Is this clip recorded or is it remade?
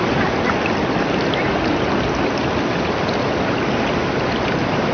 recorded